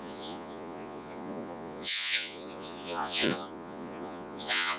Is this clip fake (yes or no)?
yes